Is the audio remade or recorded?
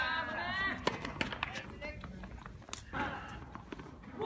recorded